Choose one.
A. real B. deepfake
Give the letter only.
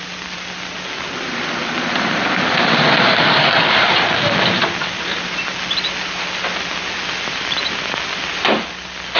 A